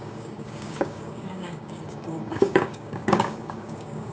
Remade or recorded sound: remade